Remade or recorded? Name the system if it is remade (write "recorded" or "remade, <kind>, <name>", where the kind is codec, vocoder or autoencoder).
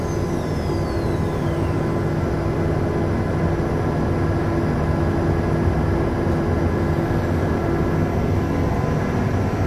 recorded